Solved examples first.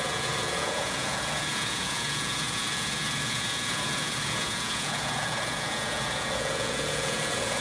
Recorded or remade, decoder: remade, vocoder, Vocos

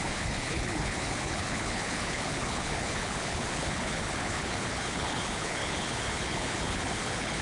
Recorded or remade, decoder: remade, codec, HILCodec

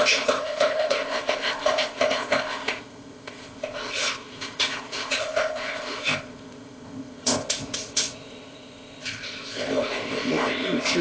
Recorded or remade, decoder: remade, codec, ZipCodec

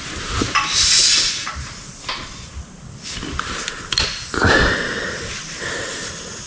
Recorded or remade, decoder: recorded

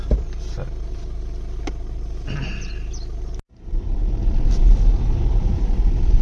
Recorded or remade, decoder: recorded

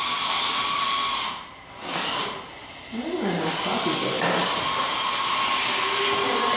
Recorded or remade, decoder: recorded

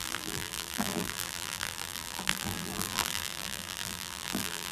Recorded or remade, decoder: remade, vocoder, BigVGAN v2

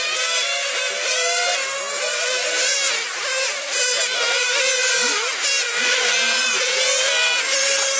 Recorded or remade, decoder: recorded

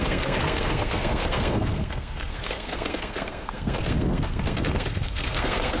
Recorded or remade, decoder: remade, codec, SNAC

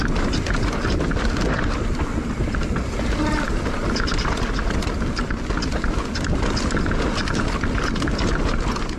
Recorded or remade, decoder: recorded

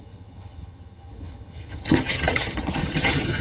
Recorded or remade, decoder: remade, vocoder, HiFi-GAN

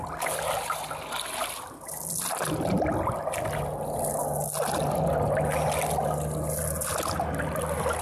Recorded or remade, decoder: recorded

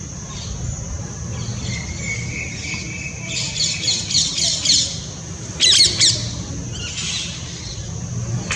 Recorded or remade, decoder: recorded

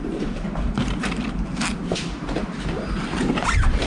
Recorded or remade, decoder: remade, vocoder, BigVGAN v2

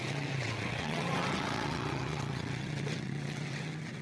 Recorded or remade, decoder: remade, vocoder, WaveNeXt